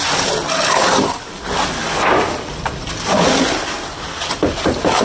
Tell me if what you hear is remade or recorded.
recorded